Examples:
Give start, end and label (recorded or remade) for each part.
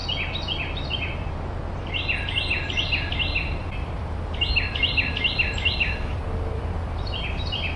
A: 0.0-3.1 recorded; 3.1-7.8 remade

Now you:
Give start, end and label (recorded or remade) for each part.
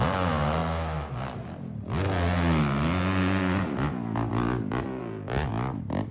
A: 0.0-6.1 recorded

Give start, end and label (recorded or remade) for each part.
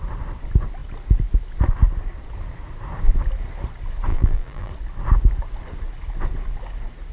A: 0.0-4.1 recorded; 4.1-4.7 remade; 4.7-7.1 recorded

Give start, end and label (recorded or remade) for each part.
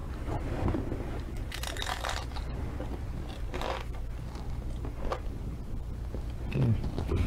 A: 0.0-7.3 remade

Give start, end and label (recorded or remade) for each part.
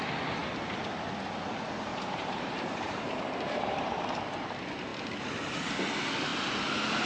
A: 0.0-1.9 recorded; 1.9-4.2 remade; 4.2-7.1 recorded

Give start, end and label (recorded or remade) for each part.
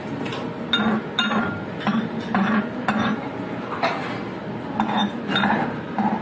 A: 0.0-1.9 recorded; 1.9-3.9 remade; 3.9-5.3 recorded; 5.3-6.2 remade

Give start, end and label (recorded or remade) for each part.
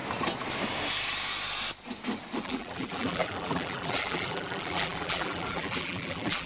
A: 0.0-2.4 recorded; 2.4-6.5 remade